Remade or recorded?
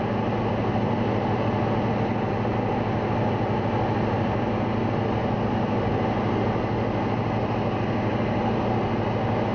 recorded